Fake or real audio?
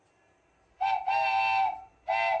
real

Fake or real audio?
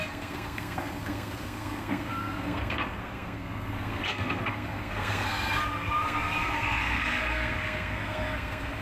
fake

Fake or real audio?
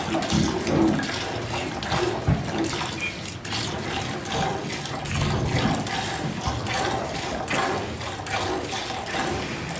real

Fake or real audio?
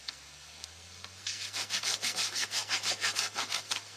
fake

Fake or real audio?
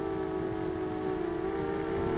real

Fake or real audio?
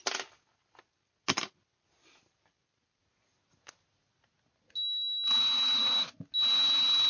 real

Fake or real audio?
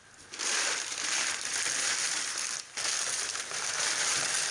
real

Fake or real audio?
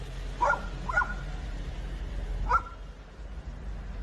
real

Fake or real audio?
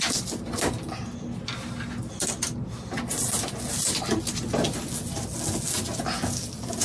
real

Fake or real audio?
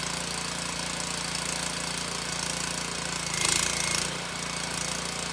real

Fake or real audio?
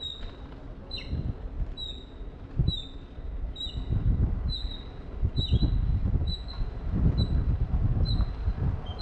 real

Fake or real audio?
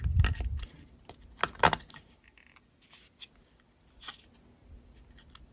real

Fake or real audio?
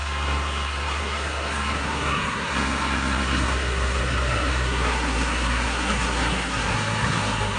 fake